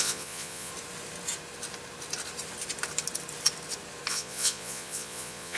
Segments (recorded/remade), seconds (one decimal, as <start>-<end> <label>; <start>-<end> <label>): 0.0-0.7 remade; 0.7-4.1 recorded; 4.1-5.6 remade